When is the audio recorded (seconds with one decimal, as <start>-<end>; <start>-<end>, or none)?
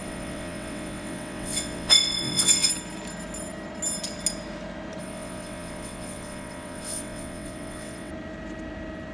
2.7-5.0; 8.1-9.1